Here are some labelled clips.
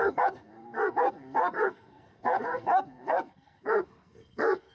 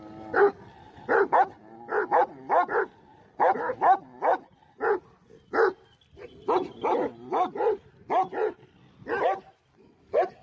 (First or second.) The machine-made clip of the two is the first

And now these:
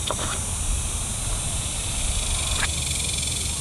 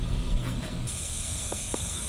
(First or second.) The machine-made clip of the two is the second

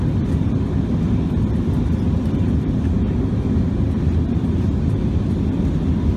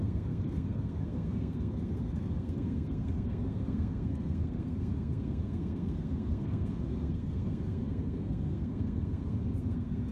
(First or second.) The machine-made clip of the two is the second